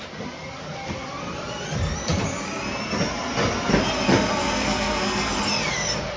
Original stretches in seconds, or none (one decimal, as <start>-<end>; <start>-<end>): 0.0-4.4; 5.4-6.2